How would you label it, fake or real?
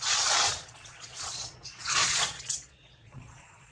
fake